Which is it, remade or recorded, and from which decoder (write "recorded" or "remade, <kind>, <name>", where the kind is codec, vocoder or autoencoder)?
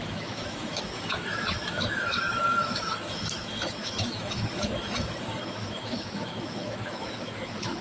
remade, autoencoder, DAC-VAE